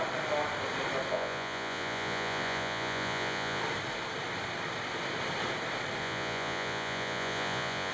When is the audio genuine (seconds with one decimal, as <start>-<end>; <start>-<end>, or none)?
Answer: 0.0-1.1; 3.6-6.0